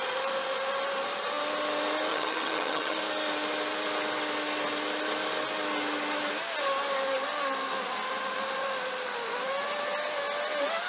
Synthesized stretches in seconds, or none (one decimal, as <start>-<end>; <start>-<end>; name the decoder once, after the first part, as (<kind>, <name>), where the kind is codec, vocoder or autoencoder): 2.1-3.0 (vocoder, HiFi-GAN)